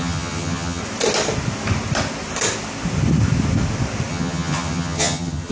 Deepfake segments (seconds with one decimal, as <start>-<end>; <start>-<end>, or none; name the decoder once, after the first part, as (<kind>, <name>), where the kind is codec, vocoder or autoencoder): 0.0-0.8 (vocoder, HiFi-GAN); 4.1-5.5